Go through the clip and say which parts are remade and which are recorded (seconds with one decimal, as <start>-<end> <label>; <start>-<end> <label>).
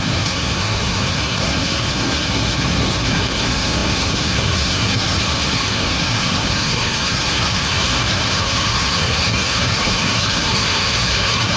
0.0-11.6 remade